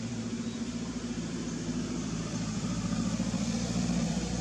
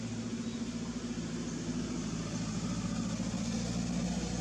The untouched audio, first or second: second